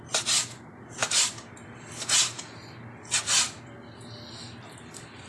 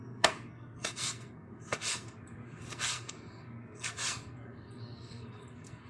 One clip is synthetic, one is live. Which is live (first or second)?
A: first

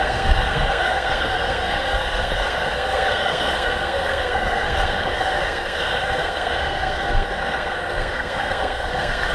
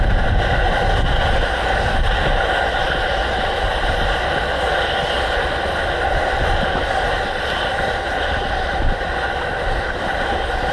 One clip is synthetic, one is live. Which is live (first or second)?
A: second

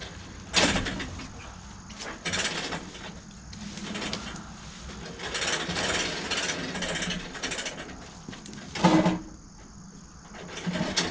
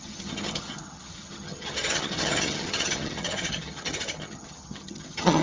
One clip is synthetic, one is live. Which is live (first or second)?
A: first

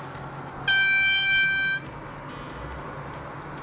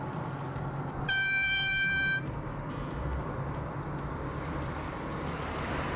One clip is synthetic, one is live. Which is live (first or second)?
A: first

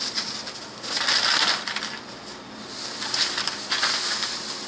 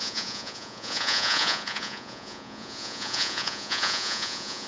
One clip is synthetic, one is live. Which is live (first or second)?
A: first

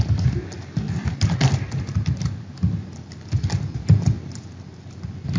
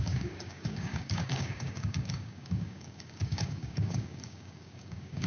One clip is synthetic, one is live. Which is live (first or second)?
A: first